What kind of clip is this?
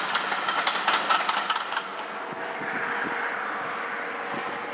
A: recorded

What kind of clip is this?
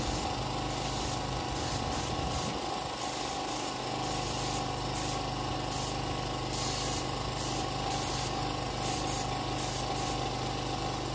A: recorded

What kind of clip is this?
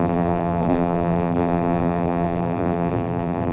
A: remade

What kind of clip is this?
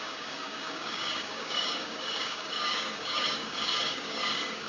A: remade